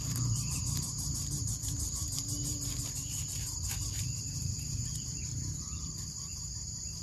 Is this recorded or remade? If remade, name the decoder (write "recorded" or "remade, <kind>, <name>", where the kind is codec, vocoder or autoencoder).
remade, vocoder, BigVGAN v2